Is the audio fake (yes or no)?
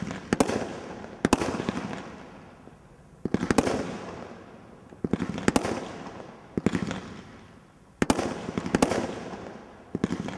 no